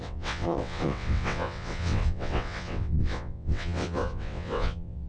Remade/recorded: remade